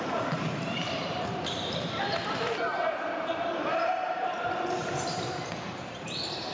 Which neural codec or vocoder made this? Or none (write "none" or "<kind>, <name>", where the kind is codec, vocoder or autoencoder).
vocoder, BigVGAN v2